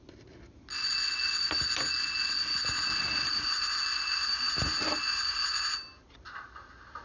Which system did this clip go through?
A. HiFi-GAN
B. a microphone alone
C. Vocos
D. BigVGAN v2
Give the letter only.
B